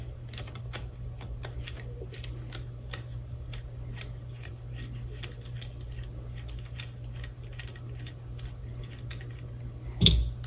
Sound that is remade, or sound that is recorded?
recorded